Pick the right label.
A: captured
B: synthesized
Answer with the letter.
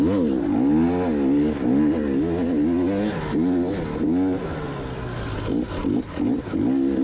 A